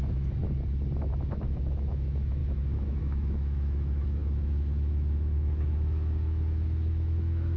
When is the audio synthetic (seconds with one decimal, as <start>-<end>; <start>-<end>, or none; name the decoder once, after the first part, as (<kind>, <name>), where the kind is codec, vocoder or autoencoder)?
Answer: 0.0-0.4 (autoencoder, DAC-VAE); 1.3-7.6